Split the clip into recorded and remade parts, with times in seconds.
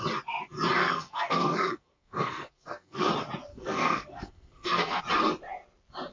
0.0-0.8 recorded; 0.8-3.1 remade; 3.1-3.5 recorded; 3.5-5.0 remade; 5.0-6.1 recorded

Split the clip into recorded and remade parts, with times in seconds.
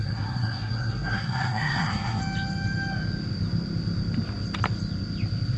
0.0-2.2 remade; 2.2-5.6 recorded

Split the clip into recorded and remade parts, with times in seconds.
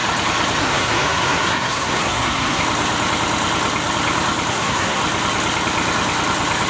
0.0-0.6 recorded; 0.6-2.6 remade; 2.6-4.5 recorded; 4.5-5.0 remade; 5.0-6.7 recorded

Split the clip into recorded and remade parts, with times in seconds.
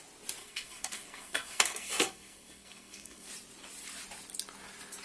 0.0-0.4 recorded; 0.4-3.3 remade; 3.3-5.0 recorded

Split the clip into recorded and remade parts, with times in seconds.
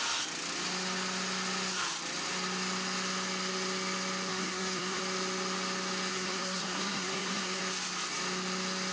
0.0-4.3 recorded; 4.3-5.0 remade; 5.0-6.1 recorded; 6.1-7.6 remade; 7.6-8.9 recorded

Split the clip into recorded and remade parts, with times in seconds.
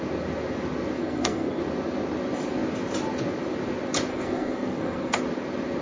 0.0-1.0 recorded; 1.0-1.6 remade; 1.6-4.1 recorded; 4.1-5.2 remade; 5.2-5.8 recorded